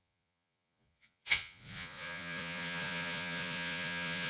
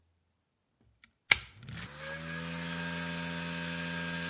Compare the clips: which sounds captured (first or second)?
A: second